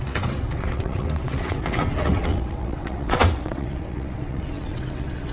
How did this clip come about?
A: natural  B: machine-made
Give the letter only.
B